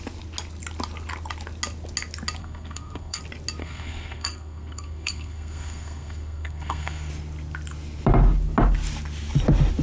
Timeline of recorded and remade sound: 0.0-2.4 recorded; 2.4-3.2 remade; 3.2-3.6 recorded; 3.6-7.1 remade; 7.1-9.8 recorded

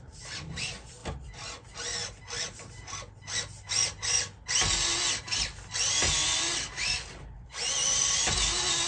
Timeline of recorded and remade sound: 0.0-8.9 recorded

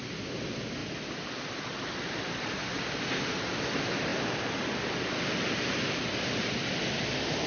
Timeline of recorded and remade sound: 0.0-0.8 recorded; 0.8-1.4 remade; 1.4-7.5 recorded

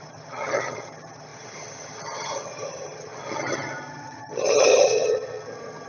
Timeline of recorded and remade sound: 0.0-5.9 remade

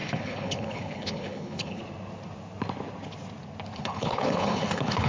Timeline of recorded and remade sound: 0.0-1.8 remade; 1.8-3.8 recorded; 3.8-5.1 remade

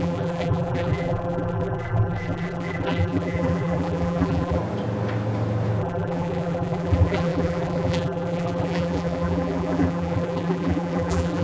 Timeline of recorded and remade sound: 0.0-4.6 remade; 4.6-5.8 recorded; 5.8-11.4 remade